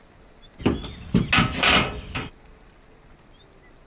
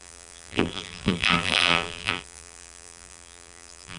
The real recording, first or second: first